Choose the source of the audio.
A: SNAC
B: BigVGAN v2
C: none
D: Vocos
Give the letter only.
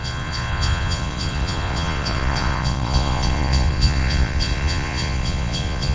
D